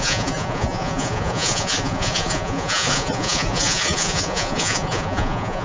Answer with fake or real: fake